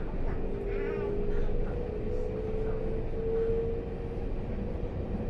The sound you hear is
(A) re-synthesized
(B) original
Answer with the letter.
B